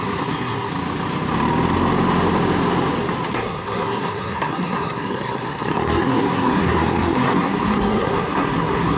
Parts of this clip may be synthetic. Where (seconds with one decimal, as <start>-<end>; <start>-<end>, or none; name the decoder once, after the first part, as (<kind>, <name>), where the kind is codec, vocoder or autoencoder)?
0.0-0.7 (codec, SNAC); 3.3-9.0